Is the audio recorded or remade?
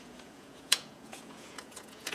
remade